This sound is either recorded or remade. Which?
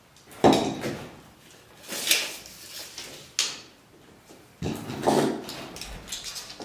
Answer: recorded